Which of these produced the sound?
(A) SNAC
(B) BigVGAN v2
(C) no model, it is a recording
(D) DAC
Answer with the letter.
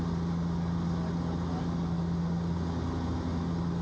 C